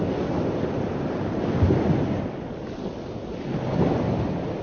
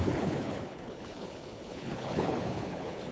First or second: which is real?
first